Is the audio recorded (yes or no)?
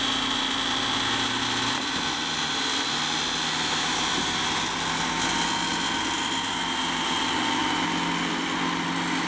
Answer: yes